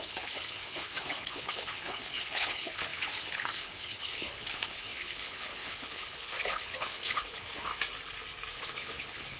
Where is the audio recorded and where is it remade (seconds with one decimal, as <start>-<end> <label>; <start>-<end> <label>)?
0.0-7.7 remade; 7.7-8.5 recorded; 8.5-9.4 remade